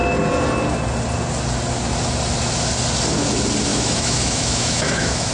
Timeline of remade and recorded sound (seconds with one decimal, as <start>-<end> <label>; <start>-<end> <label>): 0.0-3.7 recorded; 3.7-5.3 remade